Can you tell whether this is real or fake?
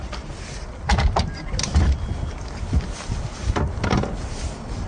real